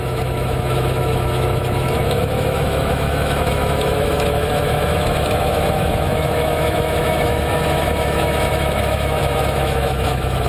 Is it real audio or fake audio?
fake